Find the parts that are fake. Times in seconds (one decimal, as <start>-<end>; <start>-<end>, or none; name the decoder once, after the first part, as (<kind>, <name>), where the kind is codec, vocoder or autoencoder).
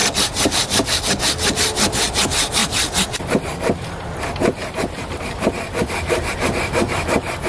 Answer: 0.0-1.0 (vocoder, BigVGAN v2); 4.6-6.3